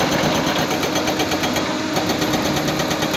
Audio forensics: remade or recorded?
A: recorded